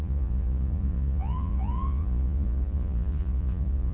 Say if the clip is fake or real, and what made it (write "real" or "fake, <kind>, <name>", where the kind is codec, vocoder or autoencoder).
fake, vocoder, Vocos